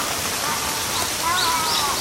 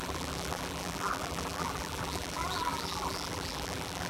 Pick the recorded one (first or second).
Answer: first